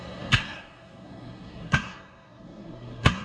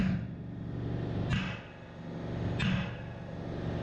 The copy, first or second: first